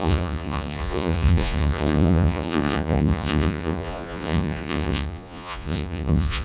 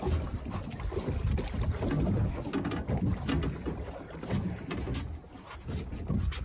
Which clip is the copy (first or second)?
first